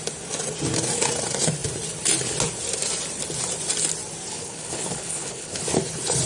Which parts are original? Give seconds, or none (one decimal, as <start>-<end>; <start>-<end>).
0.0-4.3; 5.6-6.3